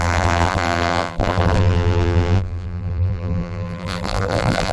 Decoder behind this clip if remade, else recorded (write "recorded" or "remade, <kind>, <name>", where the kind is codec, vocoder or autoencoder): remade, vocoder, BigVGAN v2